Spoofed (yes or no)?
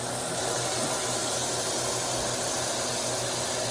no